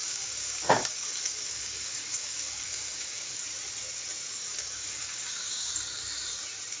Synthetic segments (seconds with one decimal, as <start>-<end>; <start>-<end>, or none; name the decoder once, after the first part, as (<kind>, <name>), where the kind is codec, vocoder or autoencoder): 0.0-3.4 (codec, DAC); 4.4-5.7